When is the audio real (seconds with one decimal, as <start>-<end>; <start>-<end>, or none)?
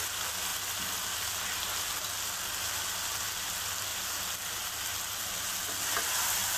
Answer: 0.0-3.9; 5.6-6.6